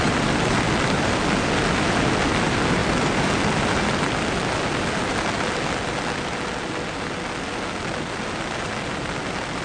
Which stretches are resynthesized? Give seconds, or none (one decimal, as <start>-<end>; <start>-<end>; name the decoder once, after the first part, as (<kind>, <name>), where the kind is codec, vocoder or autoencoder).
none